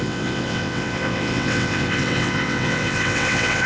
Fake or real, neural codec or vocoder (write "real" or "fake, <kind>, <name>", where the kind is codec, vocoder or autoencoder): fake, vocoder, WaveNeXt